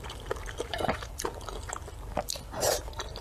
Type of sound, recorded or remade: remade